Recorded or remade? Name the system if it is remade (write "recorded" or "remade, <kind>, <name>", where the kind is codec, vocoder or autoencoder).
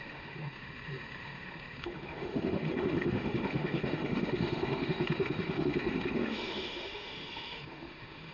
remade, autoencoder, DAC-VAE